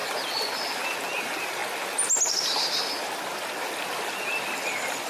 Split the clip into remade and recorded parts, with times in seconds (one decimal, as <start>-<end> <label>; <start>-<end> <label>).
0.0-5.1 recorded